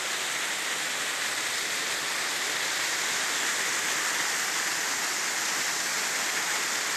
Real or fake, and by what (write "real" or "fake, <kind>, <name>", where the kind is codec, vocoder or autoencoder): real